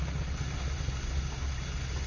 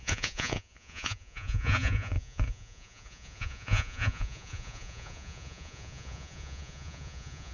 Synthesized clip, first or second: second